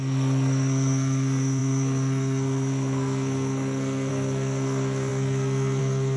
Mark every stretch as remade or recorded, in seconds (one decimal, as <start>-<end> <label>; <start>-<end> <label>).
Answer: 0.0-6.2 remade